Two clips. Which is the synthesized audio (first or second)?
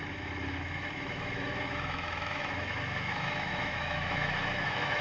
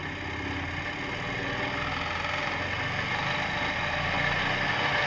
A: first